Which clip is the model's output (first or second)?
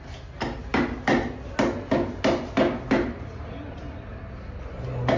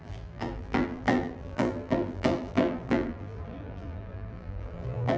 second